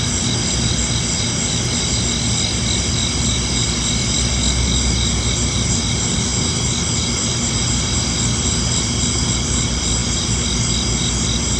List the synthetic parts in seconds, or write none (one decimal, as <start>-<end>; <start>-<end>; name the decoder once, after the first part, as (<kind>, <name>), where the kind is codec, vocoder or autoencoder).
none

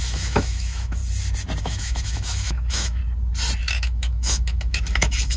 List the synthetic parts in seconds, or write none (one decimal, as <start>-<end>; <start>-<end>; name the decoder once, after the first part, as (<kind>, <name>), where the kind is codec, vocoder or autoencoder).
0.0-1.0 (autoencoder, DAC-VAE); 1.6-3.0; 3.6-5.4

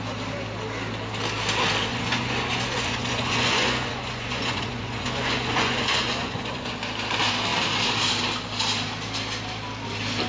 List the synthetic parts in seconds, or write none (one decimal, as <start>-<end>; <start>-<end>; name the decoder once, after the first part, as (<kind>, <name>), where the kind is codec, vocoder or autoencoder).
1.9-6.7 (vocoder, Vocos)

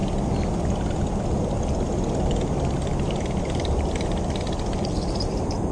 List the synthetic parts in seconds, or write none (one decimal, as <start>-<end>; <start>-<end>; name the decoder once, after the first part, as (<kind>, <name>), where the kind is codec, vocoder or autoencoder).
none

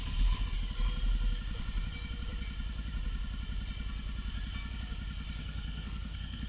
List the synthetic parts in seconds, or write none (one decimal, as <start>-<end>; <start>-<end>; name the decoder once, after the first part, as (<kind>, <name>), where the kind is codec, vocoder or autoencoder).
5.4-6.5 (codec, SNAC)

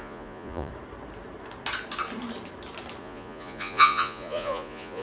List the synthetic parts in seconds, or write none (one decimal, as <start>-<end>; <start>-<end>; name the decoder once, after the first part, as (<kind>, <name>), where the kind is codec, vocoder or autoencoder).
0.0-0.7 (vocoder, Vocos); 3.0-5.0

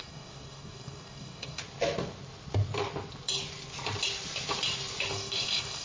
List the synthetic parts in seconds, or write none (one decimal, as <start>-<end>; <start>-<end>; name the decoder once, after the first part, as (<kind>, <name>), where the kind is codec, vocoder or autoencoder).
0.0-1.6 (codec, DAC); 5.1-5.8